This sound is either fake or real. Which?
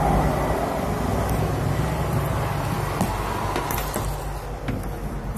real